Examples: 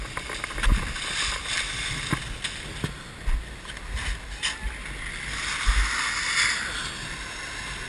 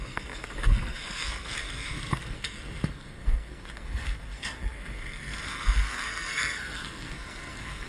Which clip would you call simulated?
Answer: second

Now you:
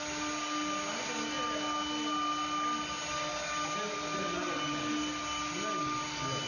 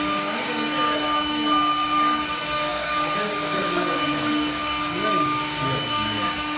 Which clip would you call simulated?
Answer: second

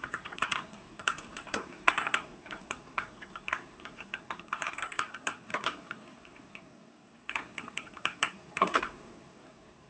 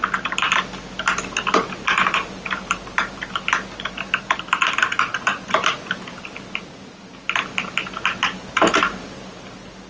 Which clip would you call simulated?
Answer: first